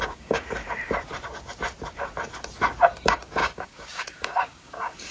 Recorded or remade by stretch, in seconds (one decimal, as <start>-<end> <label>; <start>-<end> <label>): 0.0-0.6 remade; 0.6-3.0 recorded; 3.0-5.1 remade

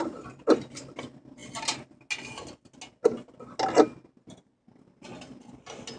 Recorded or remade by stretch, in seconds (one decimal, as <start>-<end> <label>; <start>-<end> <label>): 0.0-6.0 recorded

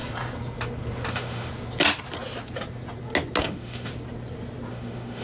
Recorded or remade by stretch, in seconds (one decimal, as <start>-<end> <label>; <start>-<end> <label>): 0.0-1.1 recorded; 1.1-1.5 remade; 1.5-3.4 recorded; 3.4-3.9 remade; 3.9-4.7 recorded; 4.7-5.2 remade

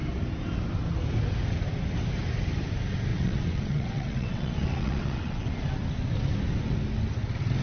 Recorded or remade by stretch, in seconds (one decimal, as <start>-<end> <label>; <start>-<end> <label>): 0.0-3.1 recorded; 3.1-5.5 remade; 5.5-7.6 recorded

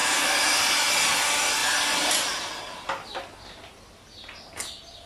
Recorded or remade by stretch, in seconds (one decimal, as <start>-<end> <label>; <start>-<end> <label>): 0.0-0.6 remade; 0.6-5.1 recorded